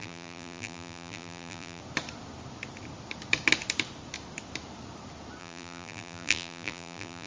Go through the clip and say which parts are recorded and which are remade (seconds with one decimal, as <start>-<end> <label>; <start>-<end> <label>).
0.0-1.8 remade; 1.8-5.4 recorded; 5.4-7.3 remade